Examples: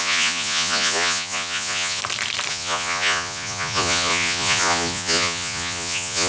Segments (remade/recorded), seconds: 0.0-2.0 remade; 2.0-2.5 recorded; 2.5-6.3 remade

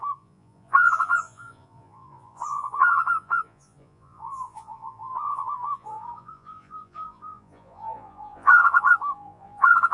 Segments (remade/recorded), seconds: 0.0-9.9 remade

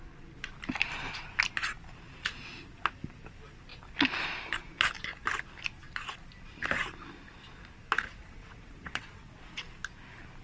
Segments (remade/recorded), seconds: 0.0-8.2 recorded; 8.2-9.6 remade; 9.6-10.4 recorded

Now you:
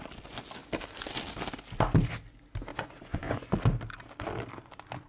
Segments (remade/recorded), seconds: 0.0-2.7 recorded; 2.7-3.5 remade; 3.5-5.1 recorded